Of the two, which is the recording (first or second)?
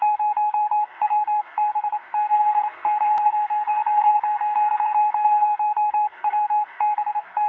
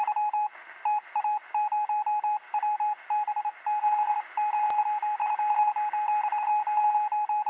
second